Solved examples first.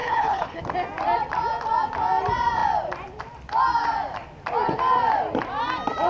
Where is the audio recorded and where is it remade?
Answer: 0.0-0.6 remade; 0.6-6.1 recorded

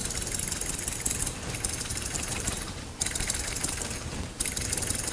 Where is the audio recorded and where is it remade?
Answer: 0.0-1.9 recorded; 1.9-4.5 remade; 4.5-5.1 recorded